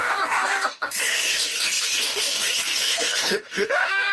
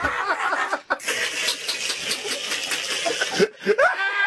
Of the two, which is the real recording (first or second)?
second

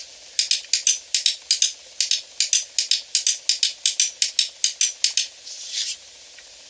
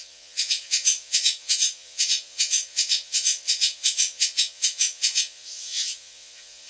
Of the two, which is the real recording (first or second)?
first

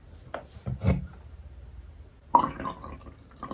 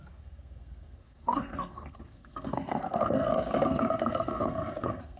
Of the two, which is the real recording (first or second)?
first